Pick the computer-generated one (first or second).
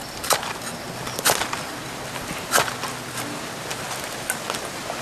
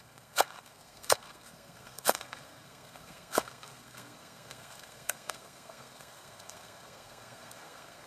second